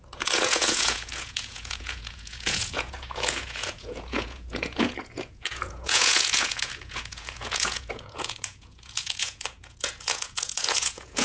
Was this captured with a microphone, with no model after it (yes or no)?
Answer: no